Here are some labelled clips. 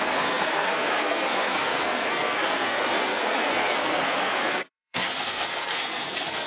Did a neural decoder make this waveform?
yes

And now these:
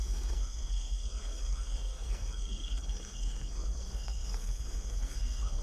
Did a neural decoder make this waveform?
yes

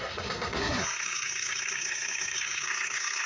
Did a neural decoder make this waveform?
yes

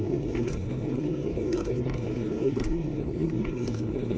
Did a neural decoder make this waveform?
yes